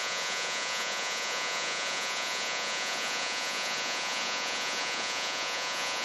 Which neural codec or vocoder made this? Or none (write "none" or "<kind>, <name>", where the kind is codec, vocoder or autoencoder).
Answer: vocoder, Vocos